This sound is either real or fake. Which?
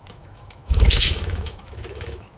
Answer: fake